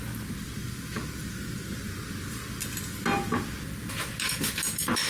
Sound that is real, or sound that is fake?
real